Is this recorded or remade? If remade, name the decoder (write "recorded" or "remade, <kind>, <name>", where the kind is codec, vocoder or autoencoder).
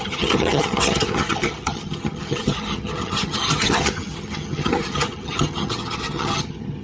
remade, vocoder, HiFi-GAN